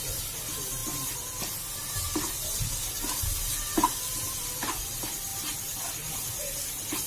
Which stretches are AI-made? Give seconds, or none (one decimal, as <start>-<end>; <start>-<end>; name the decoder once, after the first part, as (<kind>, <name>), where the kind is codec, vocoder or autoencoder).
none